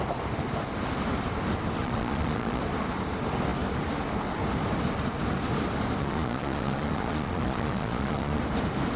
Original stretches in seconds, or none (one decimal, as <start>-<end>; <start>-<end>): 0.0-1.8; 2.6-6.0; 8.4-9.0